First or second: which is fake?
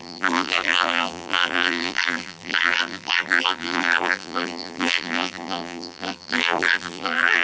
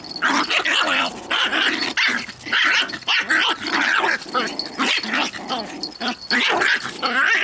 first